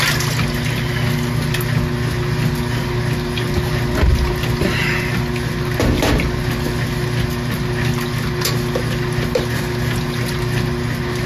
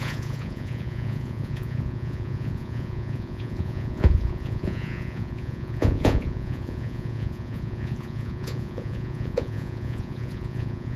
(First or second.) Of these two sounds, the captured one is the first